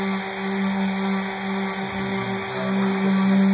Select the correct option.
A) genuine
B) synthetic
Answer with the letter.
A